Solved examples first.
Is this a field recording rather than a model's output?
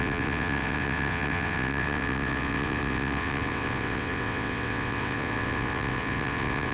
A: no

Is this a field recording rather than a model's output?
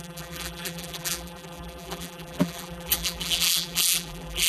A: no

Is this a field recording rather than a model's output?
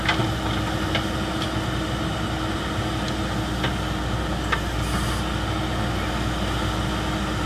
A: yes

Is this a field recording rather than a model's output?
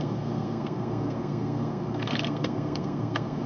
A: no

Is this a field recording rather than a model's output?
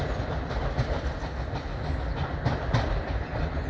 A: yes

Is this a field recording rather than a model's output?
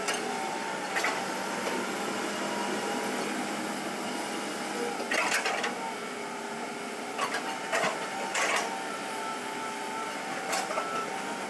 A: yes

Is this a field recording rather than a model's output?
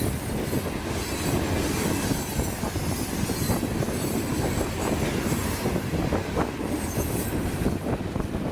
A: yes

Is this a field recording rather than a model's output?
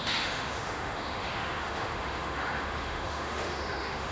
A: no